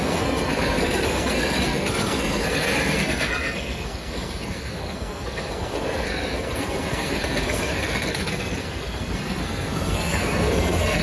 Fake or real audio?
fake